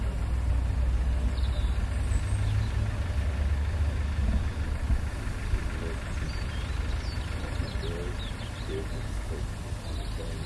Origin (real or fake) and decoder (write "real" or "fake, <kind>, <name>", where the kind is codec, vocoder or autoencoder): real